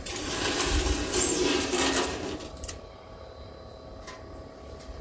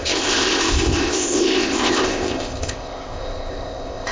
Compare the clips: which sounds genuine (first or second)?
first